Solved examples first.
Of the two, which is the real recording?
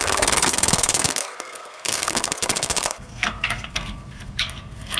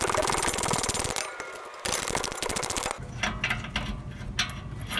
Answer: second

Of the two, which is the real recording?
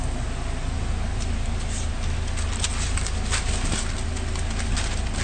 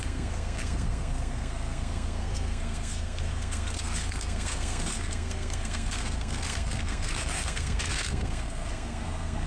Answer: first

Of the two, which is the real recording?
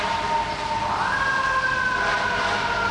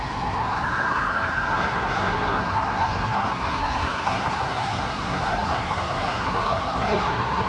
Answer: first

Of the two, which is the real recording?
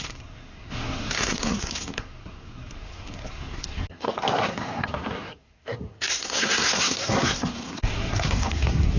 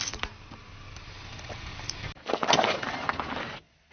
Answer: second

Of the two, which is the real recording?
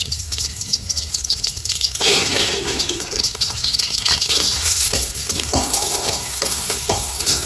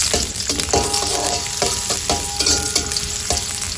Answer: second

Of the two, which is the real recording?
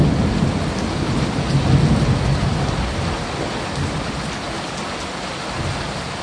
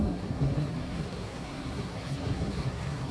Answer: first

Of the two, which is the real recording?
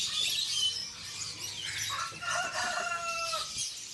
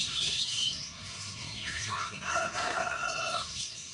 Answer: first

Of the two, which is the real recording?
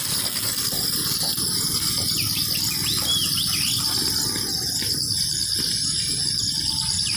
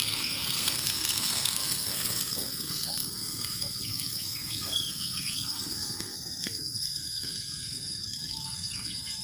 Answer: first